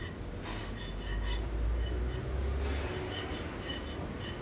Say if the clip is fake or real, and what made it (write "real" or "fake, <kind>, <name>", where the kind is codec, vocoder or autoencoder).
real